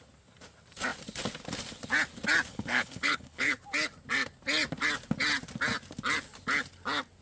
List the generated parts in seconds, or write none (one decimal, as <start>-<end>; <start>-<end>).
2.5-3.5